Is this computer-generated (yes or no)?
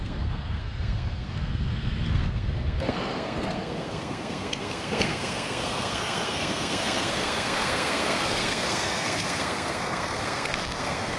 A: yes